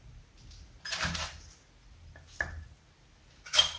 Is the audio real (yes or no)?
yes